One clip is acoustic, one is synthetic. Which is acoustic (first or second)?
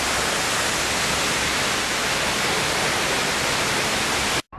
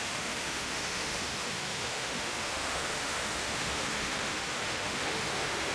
first